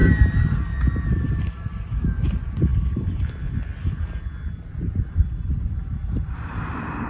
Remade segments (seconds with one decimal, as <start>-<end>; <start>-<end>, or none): none